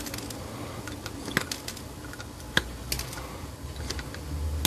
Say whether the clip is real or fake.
real